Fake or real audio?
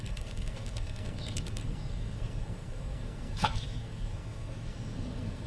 fake